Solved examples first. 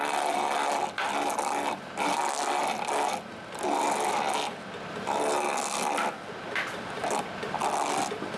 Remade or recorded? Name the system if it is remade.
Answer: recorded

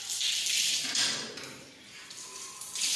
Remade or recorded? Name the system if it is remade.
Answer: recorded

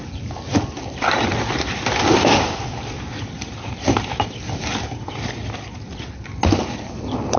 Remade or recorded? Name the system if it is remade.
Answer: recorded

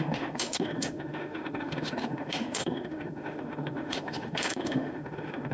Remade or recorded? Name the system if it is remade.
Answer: remade, autoencoder, DAC-VAE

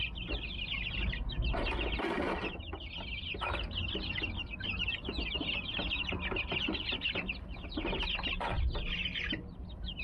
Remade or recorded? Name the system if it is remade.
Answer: recorded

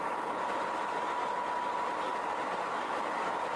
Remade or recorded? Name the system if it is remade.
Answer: recorded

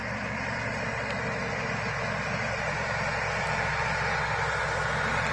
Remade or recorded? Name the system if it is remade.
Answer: recorded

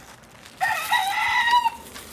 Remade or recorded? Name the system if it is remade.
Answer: recorded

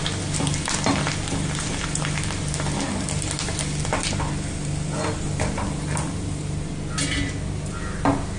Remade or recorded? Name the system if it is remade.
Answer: recorded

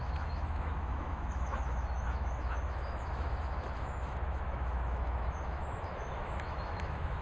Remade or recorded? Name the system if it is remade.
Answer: remade, autoencoder, DAC-VAE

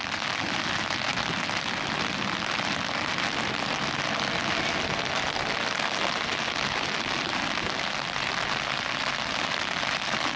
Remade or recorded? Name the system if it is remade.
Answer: recorded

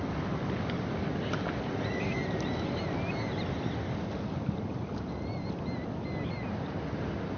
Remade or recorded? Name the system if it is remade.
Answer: recorded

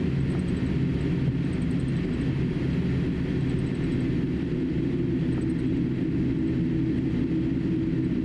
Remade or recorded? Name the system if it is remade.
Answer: recorded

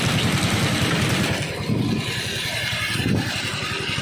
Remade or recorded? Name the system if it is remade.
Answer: recorded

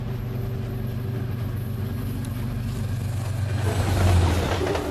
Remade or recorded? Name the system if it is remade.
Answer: recorded